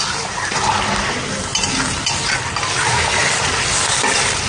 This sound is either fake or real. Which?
real